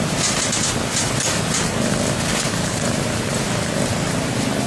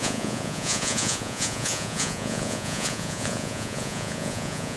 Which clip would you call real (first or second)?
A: first